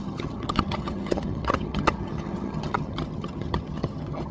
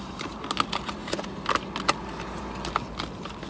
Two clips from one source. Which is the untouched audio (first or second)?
second